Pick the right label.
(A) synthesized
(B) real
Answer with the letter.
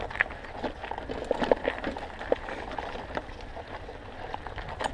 B